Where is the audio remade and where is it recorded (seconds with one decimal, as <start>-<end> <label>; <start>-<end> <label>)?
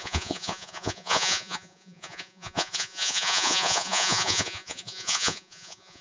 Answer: 0.0-6.0 remade